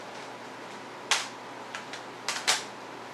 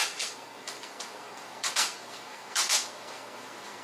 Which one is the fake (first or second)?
second